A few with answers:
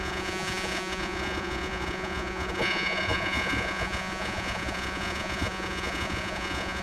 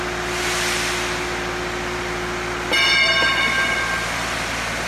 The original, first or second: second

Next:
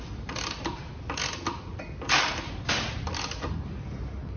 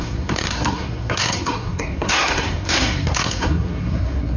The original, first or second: first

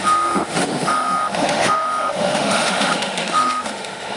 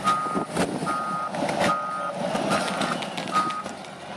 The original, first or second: second